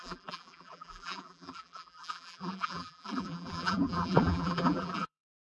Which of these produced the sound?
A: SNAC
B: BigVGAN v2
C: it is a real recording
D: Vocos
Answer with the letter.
B